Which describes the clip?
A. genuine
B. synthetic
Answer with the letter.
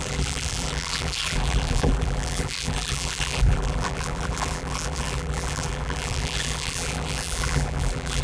B